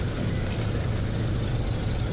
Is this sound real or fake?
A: real